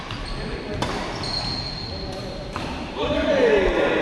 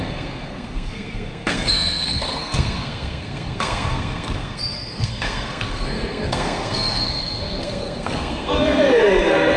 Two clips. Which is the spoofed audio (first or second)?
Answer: second